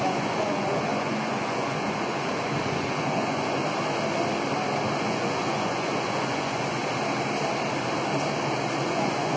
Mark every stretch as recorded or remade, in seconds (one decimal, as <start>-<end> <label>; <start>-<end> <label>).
0.0-3.6 remade; 3.6-5.0 recorded; 5.0-6.8 remade; 6.8-8.8 recorded; 8.8-9.4 remade